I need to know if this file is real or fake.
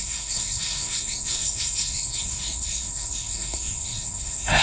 fake